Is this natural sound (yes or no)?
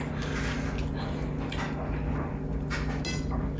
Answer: yes